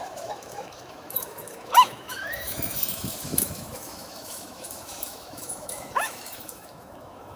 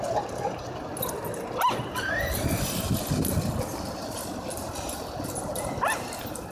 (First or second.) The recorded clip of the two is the second